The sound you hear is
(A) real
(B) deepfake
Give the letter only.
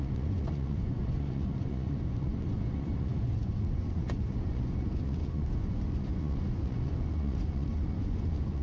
B